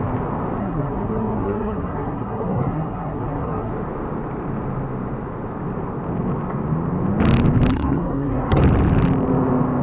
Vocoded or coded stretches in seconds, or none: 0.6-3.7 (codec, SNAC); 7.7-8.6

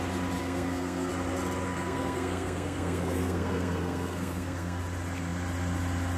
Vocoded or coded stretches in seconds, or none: 0.4-1.1 (codec, SNAC); 1.7-4.8

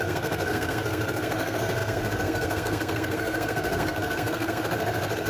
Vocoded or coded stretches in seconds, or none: 0.0-5.3 (codec, SNAC)

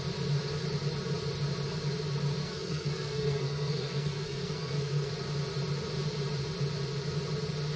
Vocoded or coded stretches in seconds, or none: 2.4-5.1 (codec, SNAC)

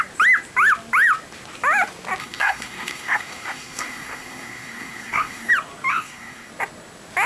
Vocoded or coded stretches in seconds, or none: 2.2-5.5 (codec, SNAC); 5.9-6.5

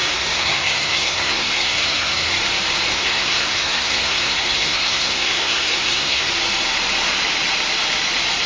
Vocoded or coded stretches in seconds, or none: 0.0-2.3 (codec, SNAC); 2.9-6.3

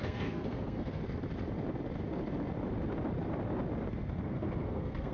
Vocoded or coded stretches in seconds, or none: 0.0-1.0 (codec, SNAC); 4.1-5.1